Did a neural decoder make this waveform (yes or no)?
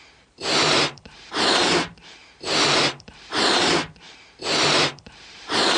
yes